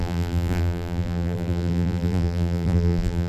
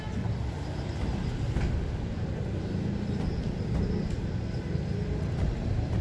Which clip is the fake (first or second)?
first